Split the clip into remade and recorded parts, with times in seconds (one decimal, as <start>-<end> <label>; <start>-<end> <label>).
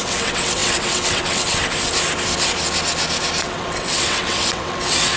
0.0-1.9 remade; 1.9-3.4 recorded; 3.4-5.2 remade